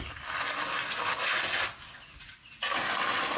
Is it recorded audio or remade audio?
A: recorded